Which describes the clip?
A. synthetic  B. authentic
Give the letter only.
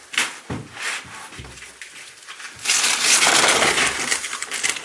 B